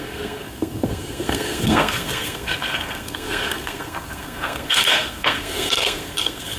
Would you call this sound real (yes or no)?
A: no